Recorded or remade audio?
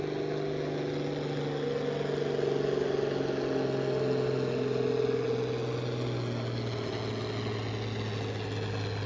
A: recorded